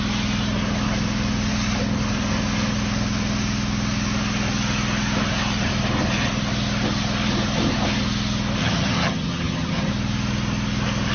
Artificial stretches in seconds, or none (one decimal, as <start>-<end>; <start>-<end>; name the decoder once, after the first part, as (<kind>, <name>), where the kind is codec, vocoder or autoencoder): 8.6-9.9 (vocoder, HiFi-GAN)